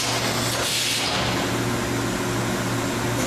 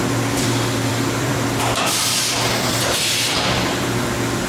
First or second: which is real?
first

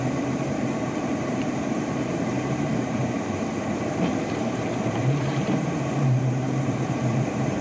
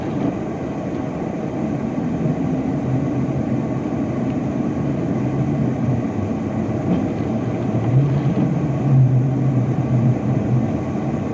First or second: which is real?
second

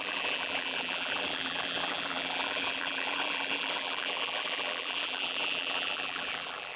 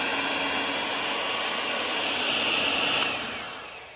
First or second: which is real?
second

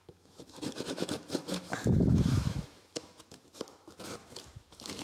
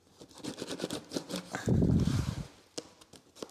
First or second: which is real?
second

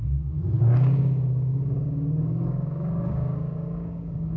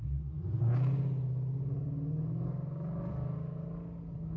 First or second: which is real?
second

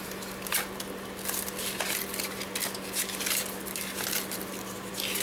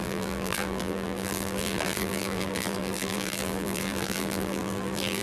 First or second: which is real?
first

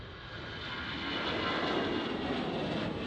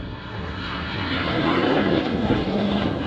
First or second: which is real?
first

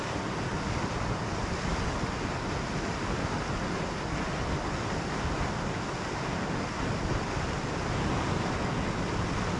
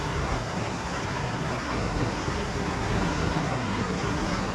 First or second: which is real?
first